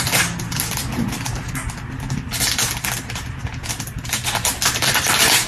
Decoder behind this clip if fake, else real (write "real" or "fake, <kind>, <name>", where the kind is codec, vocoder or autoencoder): real